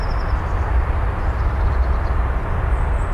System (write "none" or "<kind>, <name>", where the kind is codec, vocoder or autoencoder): none